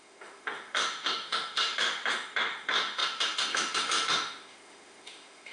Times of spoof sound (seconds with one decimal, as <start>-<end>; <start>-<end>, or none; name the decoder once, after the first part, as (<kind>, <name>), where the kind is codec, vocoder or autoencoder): 0.0-5.5 (autoencoder, DAC-VAE)